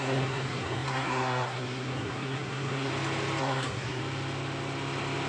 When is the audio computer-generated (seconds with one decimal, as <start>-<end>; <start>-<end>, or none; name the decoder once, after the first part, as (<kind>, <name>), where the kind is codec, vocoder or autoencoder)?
0.0-2.9 (codec, SNAC); 3.4-4.0